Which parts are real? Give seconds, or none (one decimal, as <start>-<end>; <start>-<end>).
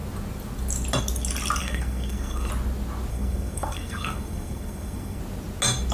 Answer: 0.0-1.6; 2.5-3.1; 5.2-5.9